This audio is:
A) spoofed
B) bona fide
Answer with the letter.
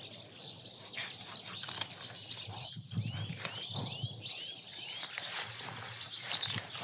B